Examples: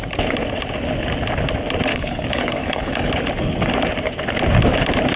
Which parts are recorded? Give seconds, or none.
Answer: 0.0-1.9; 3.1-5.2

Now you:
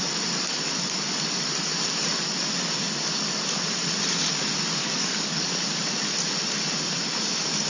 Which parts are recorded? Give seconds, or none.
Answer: 0.0-4.8; 5.5-7.7

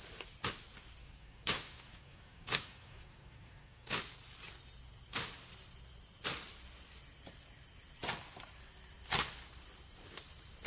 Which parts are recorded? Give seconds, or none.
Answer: 0.0-1.0; 4.0-10.7

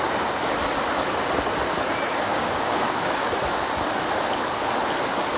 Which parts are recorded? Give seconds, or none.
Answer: 0.0-2.3; 3.3-5.4

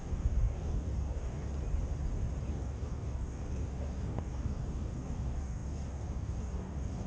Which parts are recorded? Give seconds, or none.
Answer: 1.5-2.5

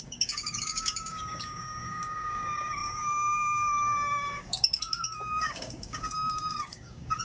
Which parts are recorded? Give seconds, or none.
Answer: none